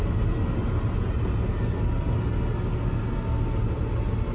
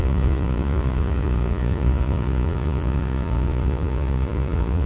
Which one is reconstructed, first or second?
second